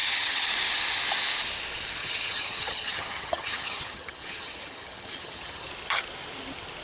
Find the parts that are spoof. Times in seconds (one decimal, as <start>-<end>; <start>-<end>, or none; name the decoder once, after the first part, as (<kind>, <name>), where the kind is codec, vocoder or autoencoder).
0.0-0.5 (vocoder, HiFi-GAN); 2.0-5.7

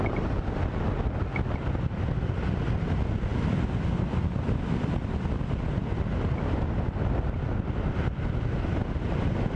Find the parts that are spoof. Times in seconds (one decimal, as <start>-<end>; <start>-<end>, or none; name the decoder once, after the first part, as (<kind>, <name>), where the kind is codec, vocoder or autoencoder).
none